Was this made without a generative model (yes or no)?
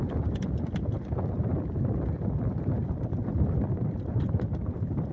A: no